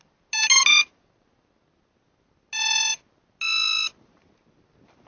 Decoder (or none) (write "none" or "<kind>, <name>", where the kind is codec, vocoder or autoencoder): none